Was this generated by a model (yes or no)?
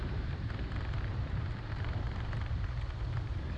yes